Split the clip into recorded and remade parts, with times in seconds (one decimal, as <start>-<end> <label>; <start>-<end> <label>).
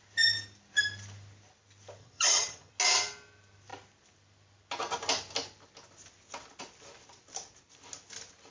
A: 0.0-2.0 recorded; 2.0-2.7 remade; 2.7-8.5 recorded